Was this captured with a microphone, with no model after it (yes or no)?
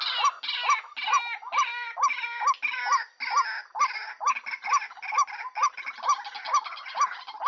yes